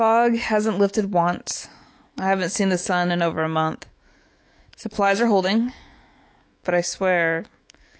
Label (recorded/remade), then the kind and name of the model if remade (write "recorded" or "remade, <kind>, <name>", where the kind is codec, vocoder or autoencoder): remade, autoencoder, DAC-VAE